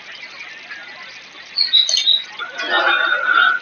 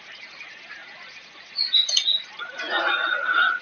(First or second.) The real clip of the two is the first